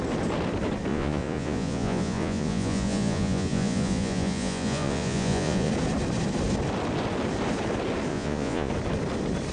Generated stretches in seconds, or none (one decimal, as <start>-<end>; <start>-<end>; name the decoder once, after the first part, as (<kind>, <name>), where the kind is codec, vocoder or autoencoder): 0.9-5.7 (vocoder, Vocos); 8.1-8.7